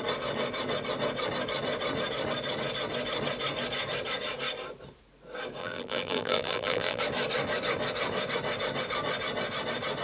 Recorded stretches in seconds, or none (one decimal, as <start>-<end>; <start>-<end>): 0.0-5.6; 7.0-10.0